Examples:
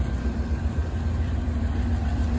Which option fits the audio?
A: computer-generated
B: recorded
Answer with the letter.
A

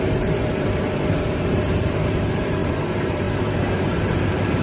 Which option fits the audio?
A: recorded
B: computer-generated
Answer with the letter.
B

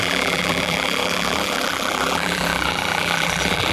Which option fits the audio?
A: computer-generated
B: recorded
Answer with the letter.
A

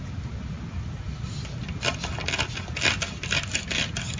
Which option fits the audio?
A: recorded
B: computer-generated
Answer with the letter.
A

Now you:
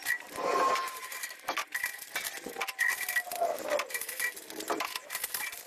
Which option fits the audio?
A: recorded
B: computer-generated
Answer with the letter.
A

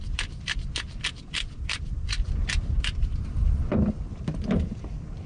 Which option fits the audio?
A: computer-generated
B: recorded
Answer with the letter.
A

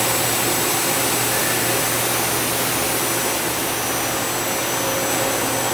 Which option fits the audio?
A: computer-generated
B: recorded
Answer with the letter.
B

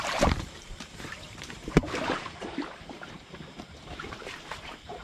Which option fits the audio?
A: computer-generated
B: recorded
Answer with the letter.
A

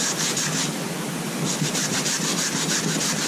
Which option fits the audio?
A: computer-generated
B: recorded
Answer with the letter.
A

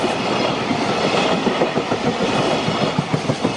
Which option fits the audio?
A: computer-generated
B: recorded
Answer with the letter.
A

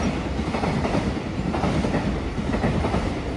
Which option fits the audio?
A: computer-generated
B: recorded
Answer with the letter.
A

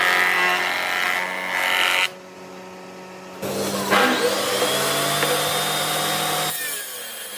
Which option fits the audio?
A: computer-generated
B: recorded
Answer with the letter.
B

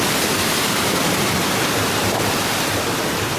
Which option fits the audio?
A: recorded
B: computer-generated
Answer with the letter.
B